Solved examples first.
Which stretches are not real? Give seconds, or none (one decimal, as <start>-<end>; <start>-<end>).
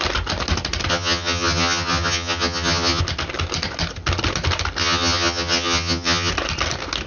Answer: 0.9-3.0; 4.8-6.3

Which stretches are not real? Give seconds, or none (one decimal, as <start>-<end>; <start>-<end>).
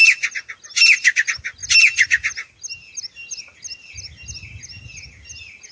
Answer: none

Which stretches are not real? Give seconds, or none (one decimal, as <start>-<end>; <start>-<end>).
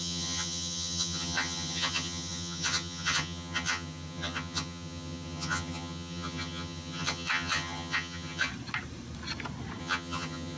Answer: 0.0-8.5; 9.8-10.6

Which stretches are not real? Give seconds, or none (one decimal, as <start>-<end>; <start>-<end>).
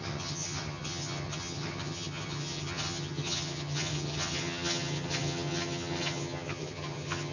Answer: 0.0-7.3